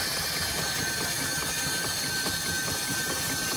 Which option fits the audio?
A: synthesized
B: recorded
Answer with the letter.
B